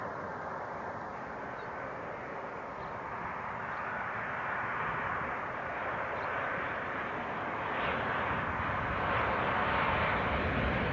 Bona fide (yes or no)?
yes